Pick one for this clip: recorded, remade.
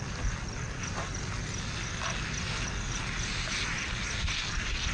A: recorded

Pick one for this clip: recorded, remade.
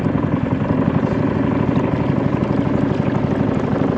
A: recorded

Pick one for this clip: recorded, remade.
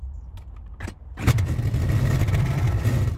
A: recorded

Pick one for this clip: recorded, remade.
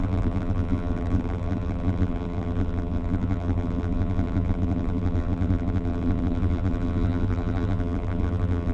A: remade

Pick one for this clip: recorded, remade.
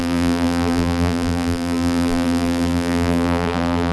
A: remade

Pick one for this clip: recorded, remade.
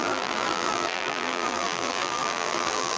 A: remade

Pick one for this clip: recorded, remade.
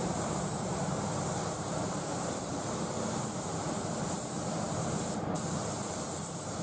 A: remade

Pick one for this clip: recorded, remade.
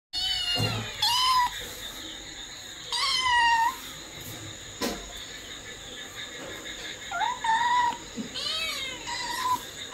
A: recorded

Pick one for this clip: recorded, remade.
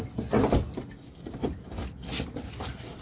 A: remade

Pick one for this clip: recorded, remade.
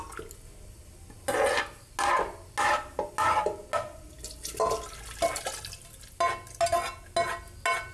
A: recorded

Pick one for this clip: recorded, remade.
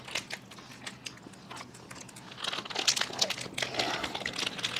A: recorded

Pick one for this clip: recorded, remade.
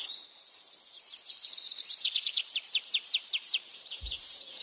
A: remade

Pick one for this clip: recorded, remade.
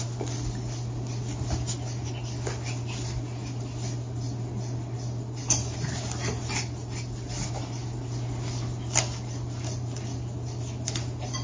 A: remade